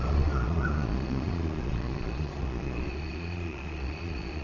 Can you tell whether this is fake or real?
fake